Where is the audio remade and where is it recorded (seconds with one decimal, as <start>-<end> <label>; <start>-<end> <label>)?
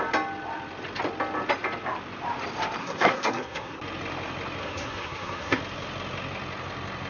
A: 0.0-2.8 recorded; 2.8-3.8 remade; 3.8-4.6 recorded; 4.6-5.6 remade; 5.6-7.1 recorded